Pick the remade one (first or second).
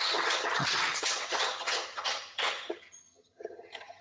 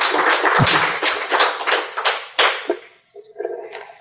first